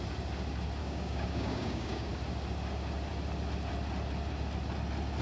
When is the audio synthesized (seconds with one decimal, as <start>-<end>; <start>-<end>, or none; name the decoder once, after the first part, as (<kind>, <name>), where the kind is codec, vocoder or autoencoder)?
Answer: 0.8-2.1 (codec, DAC)